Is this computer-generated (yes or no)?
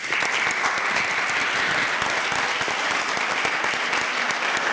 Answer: no